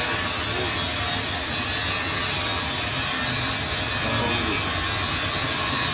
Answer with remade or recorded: recorded